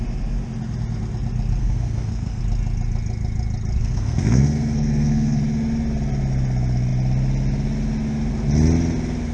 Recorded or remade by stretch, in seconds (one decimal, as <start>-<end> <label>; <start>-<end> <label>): 0.0-1.6 recorded; 1.6-2.4 remade; 2.4-3.8 recorded; 3.8-5.4 remade; 5.4-9.3 recorded

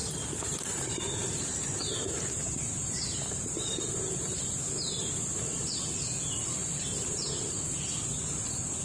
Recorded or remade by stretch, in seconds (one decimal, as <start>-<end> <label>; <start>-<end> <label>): 0.0-1.1 remade; 1.1-2.0 recorded; 2.0-4.6 remade; 4.6-6.6 recorded; 6.6-8.3 remade; 8.3-8.8 recorded

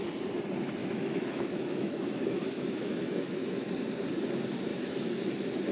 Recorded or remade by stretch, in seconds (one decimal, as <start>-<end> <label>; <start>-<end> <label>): 0.0-0.8 recorded; 0.8-3.7 remade; 3.7-4.7 recorded; 4.7-5.2 remade; 5.2-5.7 recorded

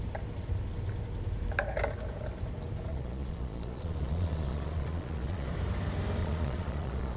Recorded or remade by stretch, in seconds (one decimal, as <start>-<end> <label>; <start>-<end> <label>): 0.0-2.9 recorded; 2.9-5.5 remade; 5.5-6.2 recorded; 6.2-7.2 remade

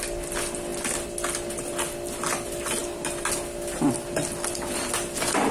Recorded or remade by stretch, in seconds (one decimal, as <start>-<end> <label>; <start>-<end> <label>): 0.0-5.5 recorded

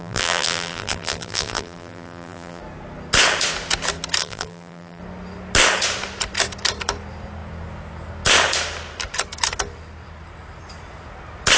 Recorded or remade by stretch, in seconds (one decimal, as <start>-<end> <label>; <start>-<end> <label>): 0.0-2.6 remade; 2.6-4.2 recorded; 4.2-5.0 remade; 5.0-11.6 recorded

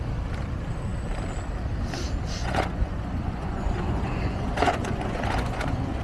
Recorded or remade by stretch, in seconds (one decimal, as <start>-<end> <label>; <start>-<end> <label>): 0.0-2.4 recorded; 2.4-6.0 remade

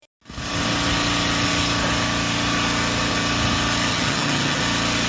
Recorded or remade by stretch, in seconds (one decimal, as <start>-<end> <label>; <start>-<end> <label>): 0.0-3.9 recorded; 3.9-4.6 remade; 4.6-5.1 recorded